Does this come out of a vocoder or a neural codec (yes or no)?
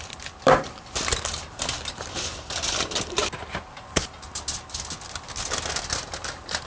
no